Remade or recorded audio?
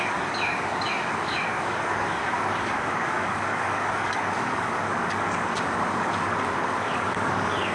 remade